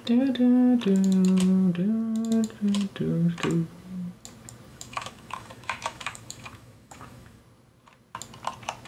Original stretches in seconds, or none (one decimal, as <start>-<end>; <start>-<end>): 0.0-4.7; 7.4-8.9